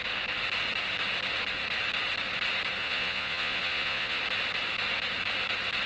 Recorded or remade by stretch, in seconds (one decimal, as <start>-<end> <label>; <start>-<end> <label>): 0.0-2.8 recorded; 2.8-4.2 remade; 4.2-5.9 recorded